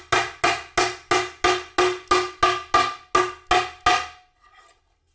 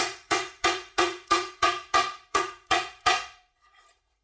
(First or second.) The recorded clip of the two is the first